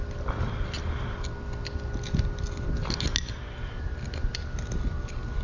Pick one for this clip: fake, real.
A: real